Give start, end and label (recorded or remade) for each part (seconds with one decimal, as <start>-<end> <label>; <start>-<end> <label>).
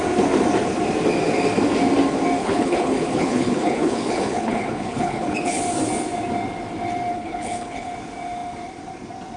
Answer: 0.0-2.4 recorded; 2.4-5.6 remade; 5.6-7.1 recorded; 7.1-7.9 remade; 7.9-9.4 recorded